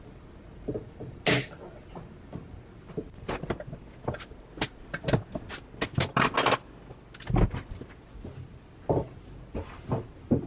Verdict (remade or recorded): recorded